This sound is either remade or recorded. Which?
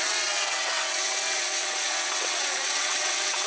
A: remade